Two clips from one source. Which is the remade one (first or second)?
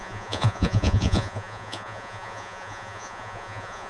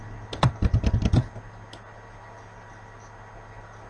first